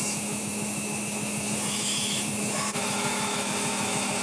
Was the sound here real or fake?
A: fake